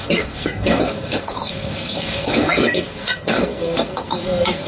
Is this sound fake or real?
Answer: fake